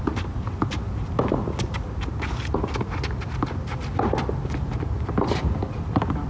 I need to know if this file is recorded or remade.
recorded